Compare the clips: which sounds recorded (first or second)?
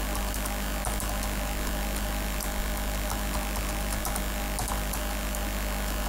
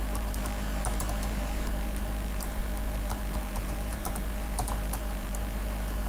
first